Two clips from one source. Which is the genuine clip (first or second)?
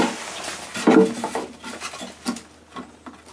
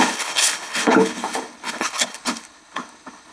first